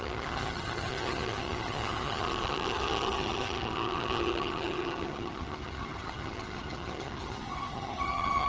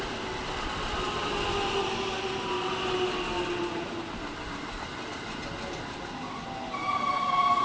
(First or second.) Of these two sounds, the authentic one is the second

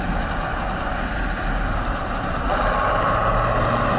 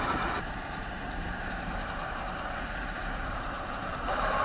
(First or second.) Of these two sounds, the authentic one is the first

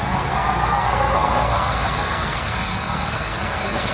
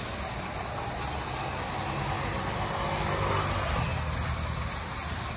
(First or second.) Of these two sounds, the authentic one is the second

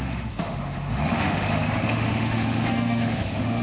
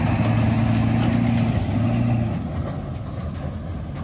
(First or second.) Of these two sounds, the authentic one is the second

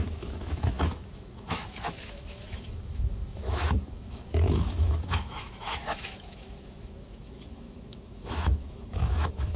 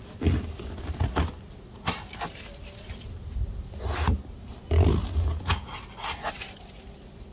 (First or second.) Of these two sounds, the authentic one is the second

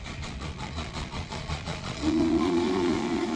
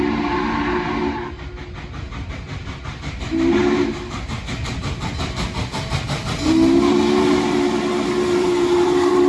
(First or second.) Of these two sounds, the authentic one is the second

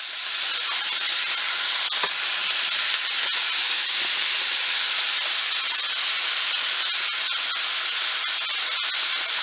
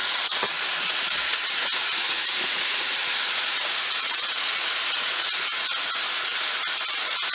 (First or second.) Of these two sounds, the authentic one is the first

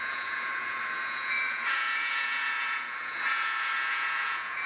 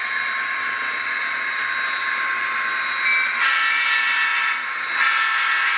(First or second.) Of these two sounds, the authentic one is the second